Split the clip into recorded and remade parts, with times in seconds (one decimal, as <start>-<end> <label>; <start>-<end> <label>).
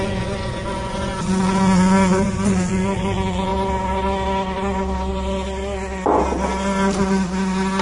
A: 0.0-3.5 remade; 3.5-7.8 recorded